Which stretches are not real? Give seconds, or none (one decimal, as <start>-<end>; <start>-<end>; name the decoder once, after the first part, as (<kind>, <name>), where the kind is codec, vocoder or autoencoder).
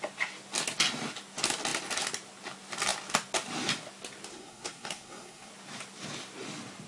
4.3-5.5 (codec, SNAC)